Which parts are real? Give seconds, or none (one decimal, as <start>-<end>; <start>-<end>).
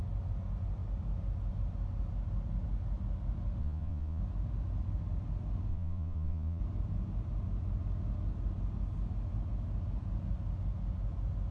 0.0-3.6; 4.2-5.7; 6.6-11.5